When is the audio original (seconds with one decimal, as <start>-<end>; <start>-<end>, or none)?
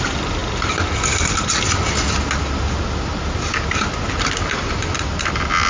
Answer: 0.0-5.7